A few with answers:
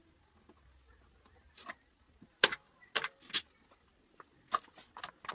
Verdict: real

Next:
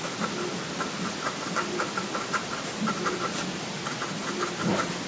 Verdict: real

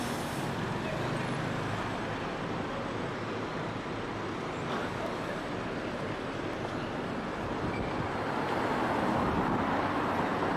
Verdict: real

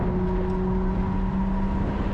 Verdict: real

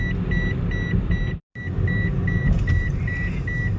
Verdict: real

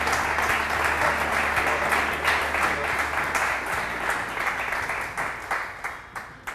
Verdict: real